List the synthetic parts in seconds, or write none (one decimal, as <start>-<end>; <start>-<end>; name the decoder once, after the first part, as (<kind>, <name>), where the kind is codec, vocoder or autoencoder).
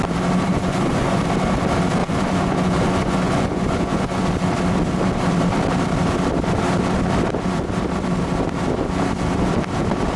0.5-1.2 (vocoder, Vocos); 2.0-4.2